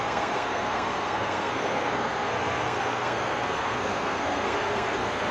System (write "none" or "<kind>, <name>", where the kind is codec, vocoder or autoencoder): codec, SNAC